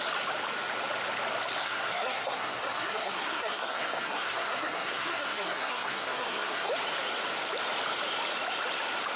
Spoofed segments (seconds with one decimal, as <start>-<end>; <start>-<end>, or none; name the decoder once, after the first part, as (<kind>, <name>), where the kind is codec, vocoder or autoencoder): 1.6-6.7 (codec, SNAC)

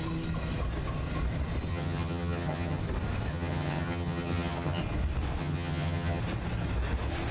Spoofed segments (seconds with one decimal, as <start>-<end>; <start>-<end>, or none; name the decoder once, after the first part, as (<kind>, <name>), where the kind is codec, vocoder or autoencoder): 1.7-2.8 (vocoder, HiFi-GAN); 3.3-4.8; 5.4-6.2

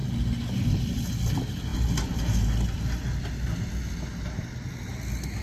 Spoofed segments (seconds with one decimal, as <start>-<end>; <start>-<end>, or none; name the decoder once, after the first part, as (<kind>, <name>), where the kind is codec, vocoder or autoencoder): none

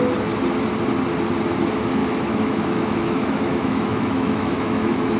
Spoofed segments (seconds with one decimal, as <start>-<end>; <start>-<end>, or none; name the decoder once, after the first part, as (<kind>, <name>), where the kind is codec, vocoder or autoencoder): 2.0-5.2 (autoencoder, DAC-VAE)

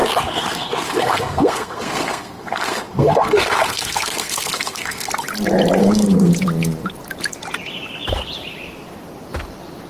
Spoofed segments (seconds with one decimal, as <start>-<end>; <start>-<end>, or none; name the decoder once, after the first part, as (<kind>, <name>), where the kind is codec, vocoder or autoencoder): 0.0-5.1 (codec, SNAC); 5.8-6.3

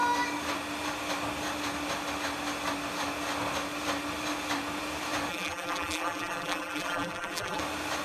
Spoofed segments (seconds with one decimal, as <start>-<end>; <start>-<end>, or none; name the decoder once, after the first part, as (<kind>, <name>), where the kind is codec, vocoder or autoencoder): 5.3-7.6 (vocoder, BigVGAN v2)

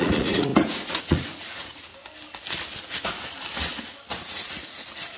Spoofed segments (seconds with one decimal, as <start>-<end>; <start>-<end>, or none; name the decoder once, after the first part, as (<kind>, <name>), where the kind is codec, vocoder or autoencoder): 0.0-1.9 (vocoder, Vocos); 4.2-5.2